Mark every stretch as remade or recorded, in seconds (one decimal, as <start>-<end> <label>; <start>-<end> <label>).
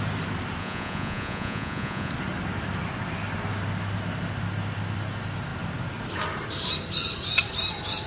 0.0-0.6 recorded; 0.6-2.1 remade; 2.1-8.1 recorded